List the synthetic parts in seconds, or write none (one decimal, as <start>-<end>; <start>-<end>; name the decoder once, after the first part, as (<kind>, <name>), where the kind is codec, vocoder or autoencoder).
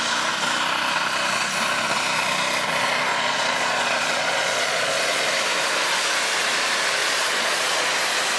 3.1-5.2 (vocoder, Vocos); 7.0-7.8